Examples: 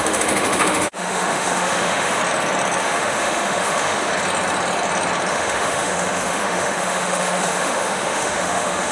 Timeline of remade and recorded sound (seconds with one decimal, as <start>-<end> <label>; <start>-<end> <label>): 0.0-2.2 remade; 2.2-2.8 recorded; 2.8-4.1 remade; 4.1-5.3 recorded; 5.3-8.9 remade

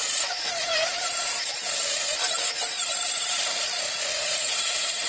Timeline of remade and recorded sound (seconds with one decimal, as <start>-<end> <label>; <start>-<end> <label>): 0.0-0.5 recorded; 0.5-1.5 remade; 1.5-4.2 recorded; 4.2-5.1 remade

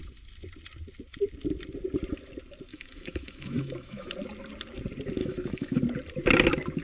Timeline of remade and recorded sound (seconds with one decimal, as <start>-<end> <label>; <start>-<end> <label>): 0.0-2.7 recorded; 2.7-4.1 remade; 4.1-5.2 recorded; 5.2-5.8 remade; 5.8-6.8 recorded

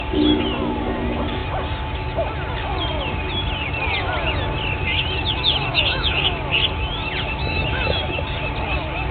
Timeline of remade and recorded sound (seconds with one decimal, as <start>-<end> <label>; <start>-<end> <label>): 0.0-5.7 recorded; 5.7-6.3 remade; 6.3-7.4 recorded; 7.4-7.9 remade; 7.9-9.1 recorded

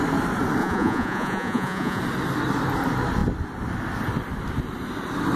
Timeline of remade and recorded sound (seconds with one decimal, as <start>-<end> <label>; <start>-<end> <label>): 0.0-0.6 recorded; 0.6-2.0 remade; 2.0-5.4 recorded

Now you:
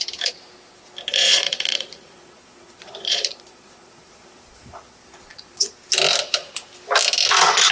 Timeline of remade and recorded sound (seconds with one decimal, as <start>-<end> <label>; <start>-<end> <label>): 0.0-1.1 recorded; 1.1-5.7 remade; 5.7-7.7 recorded